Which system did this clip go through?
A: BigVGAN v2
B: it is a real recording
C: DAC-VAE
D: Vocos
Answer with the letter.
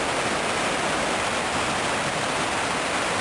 B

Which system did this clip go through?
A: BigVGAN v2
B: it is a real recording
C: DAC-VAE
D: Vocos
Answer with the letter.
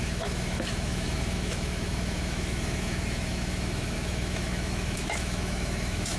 C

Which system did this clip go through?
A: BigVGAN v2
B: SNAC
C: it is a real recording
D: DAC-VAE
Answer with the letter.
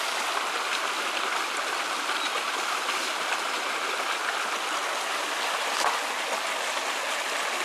C